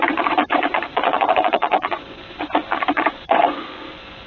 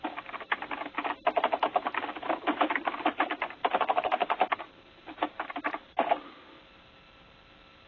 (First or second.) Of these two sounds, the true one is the second